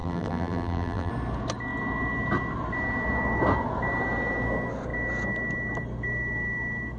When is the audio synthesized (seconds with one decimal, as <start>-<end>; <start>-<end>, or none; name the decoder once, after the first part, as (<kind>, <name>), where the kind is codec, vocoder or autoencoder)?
0.0-1.1 (vocoder, BigVGAN v2)